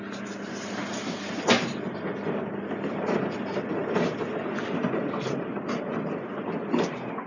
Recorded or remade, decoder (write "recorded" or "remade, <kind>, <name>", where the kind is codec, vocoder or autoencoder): recorded